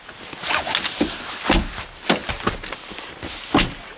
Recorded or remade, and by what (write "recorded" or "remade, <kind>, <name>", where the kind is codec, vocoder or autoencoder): recorded